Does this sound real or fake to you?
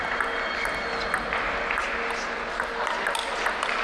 real